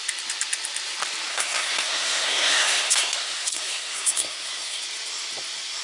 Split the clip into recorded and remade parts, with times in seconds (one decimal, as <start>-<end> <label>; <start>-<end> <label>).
0.0-1.3 recorded; 1.3-4.8 remade; 4.8-5.8 recorded